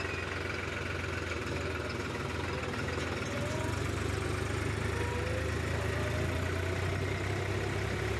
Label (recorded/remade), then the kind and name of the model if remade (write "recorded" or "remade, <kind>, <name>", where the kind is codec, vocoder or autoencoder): recorded